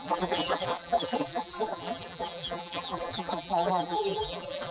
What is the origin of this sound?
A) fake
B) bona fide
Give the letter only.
A